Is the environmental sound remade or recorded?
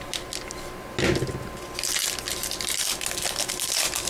recorded